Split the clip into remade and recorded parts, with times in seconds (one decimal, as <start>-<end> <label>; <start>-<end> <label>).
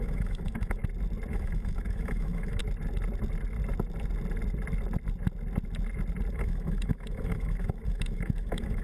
0.0-0.8 remade; 0.8-1.3 recorded; 1.3-2.6 remade; 2.6-6.3 recorded; 6.3-8.8 remade